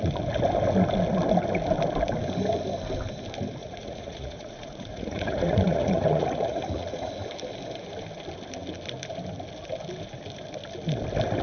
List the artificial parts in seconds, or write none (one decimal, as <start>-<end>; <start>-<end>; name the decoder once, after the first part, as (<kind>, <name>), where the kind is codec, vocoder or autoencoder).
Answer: 3.6-7.1 (vocoder, Vocos)